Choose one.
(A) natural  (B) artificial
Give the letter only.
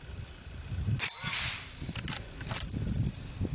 A